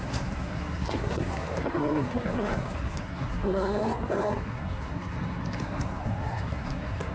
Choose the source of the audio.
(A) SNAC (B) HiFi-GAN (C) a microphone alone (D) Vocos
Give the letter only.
A